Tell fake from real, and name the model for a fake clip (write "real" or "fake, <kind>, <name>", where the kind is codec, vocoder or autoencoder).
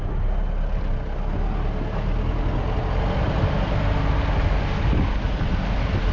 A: real